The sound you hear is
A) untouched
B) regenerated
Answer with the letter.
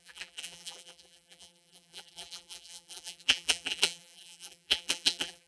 B